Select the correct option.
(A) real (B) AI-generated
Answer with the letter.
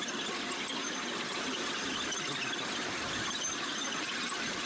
A